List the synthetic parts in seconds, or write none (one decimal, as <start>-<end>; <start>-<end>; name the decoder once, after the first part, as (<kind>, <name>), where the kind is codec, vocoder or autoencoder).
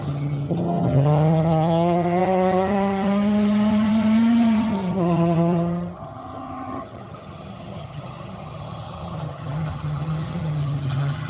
0.0-11.3 (vocoder, HiFi-GAN)